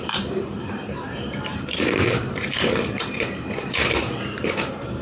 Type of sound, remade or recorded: remade